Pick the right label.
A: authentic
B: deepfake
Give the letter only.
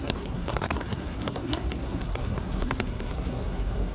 B